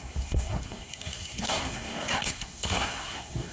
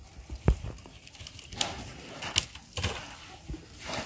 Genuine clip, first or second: second